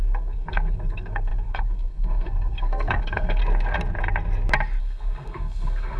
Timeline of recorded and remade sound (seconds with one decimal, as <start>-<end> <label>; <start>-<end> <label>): 0.0-3.4 remade; 3.4-4.8 recorded; 4.8-6.0 remade